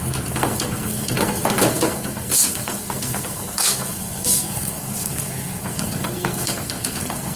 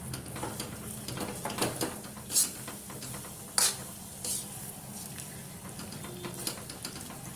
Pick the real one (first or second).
second